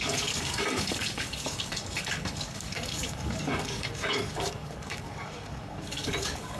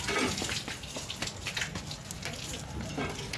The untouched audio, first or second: second